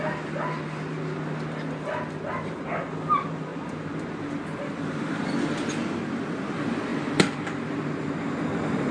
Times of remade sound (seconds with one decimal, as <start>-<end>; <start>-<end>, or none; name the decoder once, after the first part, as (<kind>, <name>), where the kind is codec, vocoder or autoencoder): none